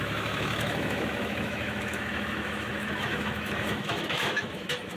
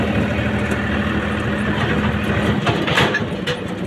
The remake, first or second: first